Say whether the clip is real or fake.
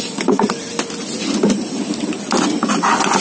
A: real